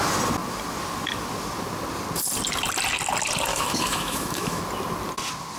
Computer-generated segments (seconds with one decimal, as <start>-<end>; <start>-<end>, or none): 3.5-4.6